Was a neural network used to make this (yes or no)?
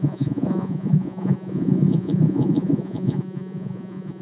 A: yes